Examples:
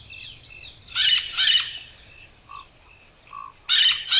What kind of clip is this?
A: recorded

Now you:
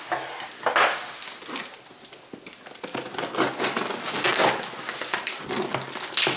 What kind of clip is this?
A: recorded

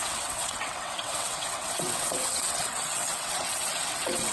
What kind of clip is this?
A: remade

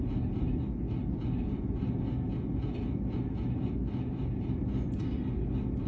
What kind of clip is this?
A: recorded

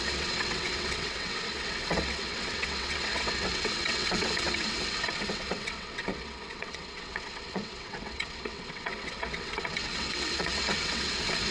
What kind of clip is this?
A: remade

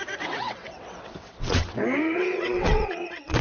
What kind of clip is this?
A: remade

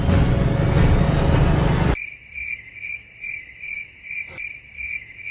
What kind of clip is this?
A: recorded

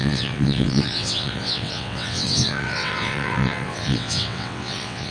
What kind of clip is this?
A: remade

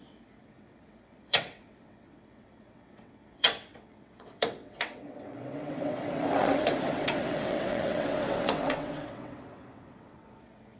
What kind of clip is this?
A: remade